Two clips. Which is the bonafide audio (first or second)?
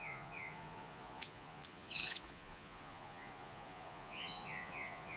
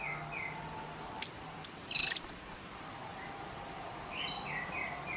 second